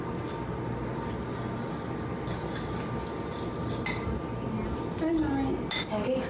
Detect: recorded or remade recorded